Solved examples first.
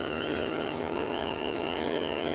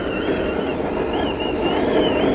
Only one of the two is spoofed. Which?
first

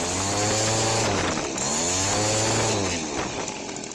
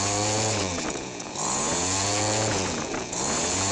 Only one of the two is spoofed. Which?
second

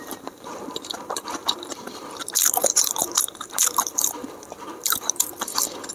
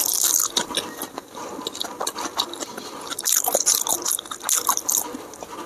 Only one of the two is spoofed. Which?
first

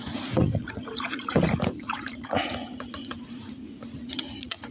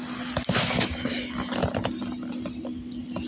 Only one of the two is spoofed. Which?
first